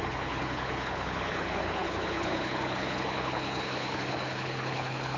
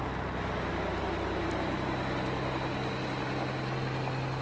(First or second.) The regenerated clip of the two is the first